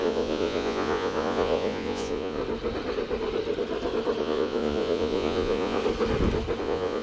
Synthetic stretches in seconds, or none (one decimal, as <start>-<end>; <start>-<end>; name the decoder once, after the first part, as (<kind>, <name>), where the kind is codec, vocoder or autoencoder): 0.0-2.4 (vocoder, Vocos); 4.2-5.8; 6.6-7.0